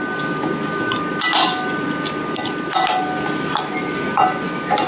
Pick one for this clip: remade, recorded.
recorded